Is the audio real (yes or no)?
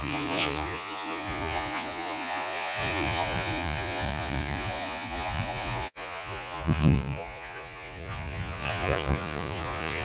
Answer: no